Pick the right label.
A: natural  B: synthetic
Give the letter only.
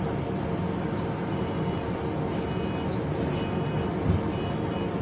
A